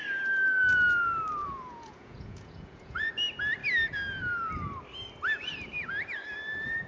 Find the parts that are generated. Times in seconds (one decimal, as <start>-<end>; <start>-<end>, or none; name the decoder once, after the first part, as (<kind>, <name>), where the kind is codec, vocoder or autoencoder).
1.4-3.1 (vocoder, Vocos)